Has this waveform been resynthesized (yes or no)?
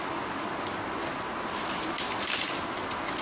no